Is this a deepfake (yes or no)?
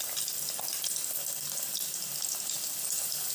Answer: no